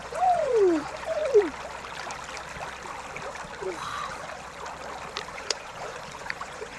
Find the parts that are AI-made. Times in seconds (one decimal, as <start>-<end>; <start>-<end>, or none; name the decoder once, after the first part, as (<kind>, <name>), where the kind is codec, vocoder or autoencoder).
0.0-1.2 (vocoder, Vocos); 5.3-6.8